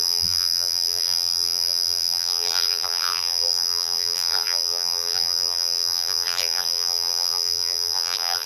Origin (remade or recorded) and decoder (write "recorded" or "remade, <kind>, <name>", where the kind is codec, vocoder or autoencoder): remade, vocoder, BigVGAN v2